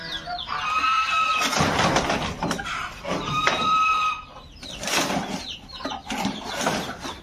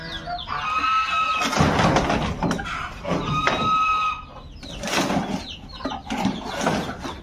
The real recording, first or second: second